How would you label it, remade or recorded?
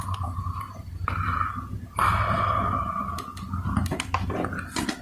recorded